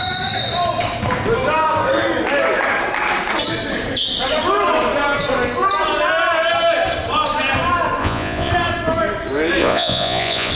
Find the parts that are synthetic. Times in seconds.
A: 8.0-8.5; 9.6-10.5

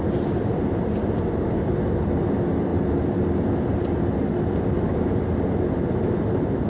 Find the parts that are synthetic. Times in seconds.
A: none

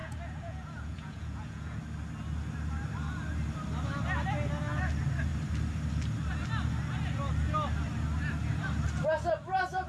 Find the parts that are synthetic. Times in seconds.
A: 0.0-1.8

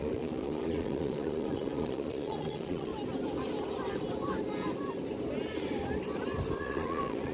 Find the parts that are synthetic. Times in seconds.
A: 0.0-2.9; 6.6-7.3

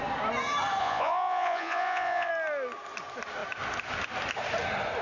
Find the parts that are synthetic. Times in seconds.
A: 0.8-2.3

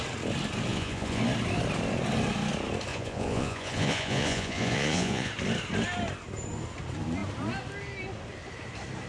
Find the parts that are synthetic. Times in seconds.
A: 0.7-1.2; 2.9-5.3

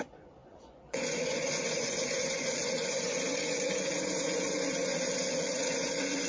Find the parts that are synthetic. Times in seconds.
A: 0.0-6.3